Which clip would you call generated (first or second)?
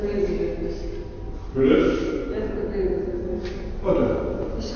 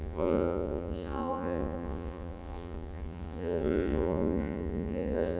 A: second